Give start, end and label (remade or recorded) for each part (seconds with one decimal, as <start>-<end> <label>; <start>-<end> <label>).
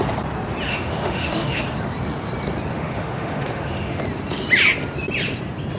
0.0-0.7 recorded; 0.7-1.6 remade; 1.6-2.7 recorded; 2.7-4.0 remade; 4.0-5.8 recorded